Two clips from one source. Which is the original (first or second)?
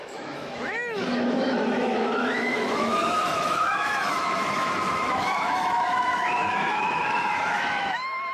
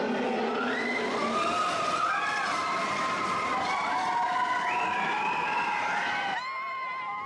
second